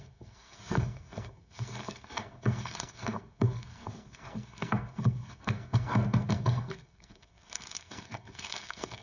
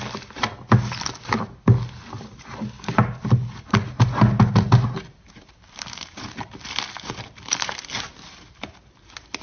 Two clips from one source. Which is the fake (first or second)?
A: first